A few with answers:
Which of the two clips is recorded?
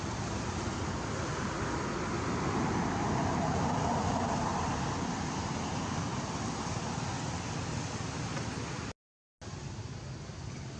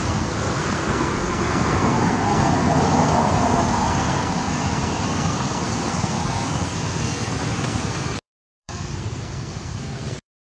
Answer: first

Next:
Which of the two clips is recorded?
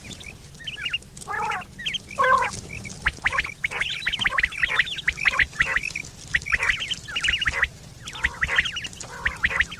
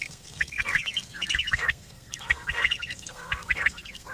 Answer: first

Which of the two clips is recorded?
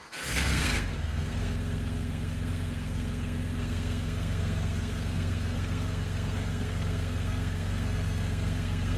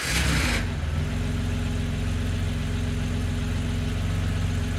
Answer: second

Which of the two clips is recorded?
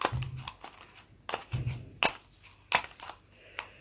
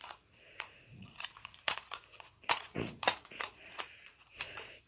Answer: first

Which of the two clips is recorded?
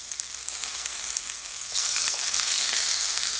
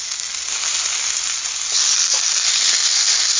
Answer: second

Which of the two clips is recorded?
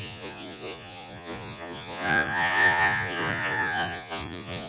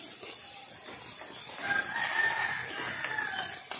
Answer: second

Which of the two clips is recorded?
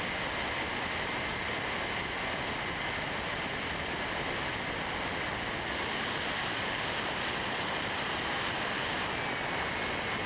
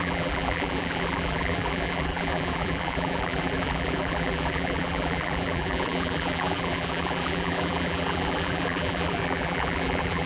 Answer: first